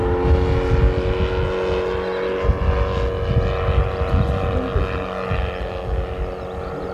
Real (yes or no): yes